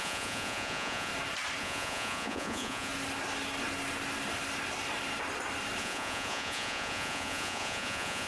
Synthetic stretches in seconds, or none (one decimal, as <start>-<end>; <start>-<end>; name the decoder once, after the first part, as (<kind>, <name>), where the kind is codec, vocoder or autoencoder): 0.0-1.1 (vocoder, Vocos); 1.6-2.9; 5.8-8.3